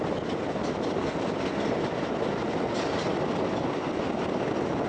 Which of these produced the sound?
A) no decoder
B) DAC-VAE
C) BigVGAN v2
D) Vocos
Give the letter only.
A